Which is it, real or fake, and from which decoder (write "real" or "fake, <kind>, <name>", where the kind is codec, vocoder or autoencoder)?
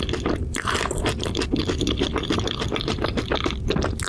real